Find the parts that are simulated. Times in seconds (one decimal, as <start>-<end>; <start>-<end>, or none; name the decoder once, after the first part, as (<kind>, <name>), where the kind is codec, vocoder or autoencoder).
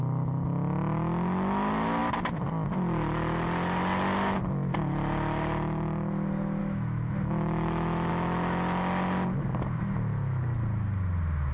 6.6-8.1 (autoencoder, DAC-VAE)